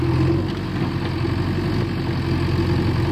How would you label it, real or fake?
real